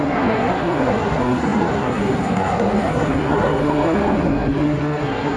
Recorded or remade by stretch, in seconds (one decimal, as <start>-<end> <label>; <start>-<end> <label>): 0.0-5.4 remade